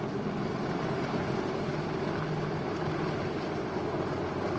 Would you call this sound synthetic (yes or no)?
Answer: no